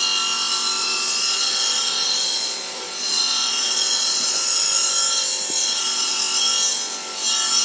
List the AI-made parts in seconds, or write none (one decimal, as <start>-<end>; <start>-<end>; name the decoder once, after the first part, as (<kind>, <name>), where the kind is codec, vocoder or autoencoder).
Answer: 0.8-4.9 (vocoder, Vocos); 5.6-6.2